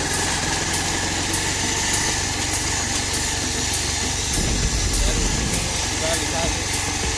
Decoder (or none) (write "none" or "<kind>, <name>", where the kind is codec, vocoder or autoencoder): none